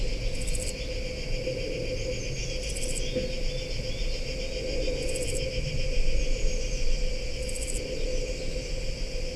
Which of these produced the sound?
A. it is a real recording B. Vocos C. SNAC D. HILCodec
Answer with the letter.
A